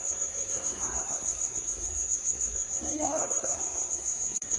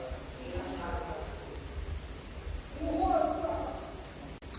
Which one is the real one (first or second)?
second